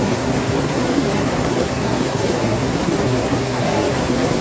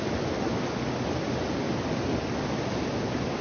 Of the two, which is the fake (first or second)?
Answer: first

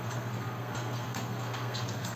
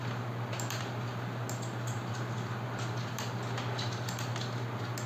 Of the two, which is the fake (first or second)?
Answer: first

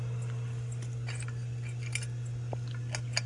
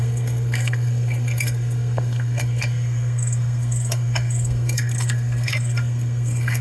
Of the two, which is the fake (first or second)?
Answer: second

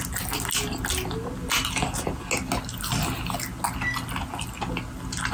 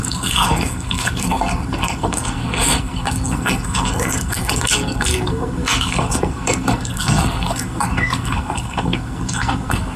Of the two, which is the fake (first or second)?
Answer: second